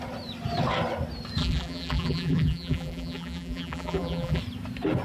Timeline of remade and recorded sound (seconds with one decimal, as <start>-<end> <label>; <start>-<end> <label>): 0.0-1.4 recorded; 1.4-4.4 remade; 4.4-5.0 recorded